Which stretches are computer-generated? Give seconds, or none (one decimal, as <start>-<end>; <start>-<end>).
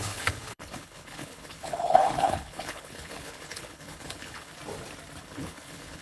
0.0-4.5; 5.2-6.0